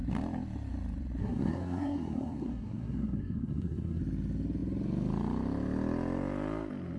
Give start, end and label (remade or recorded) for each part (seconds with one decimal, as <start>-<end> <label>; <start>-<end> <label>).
0.0-1.2 recorded; 1.2-4.0 remade; 4.0-7.0 recorded